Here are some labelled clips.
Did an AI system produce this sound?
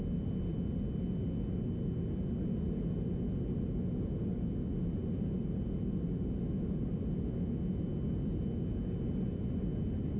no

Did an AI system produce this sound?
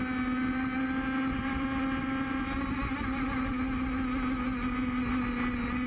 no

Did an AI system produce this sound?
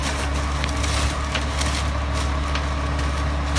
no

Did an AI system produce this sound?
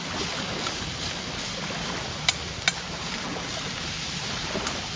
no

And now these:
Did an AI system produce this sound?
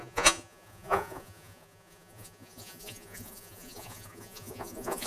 yes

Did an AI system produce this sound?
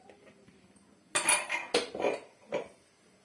no